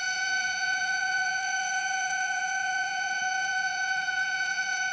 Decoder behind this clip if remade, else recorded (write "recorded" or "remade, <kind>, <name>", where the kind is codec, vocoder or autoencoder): remade, vocoder, Vocos